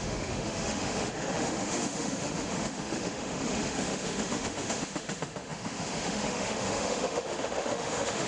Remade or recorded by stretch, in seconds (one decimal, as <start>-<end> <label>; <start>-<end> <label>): 0.0-8.3 remade